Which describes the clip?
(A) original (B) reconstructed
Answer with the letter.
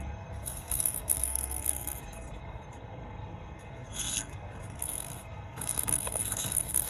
B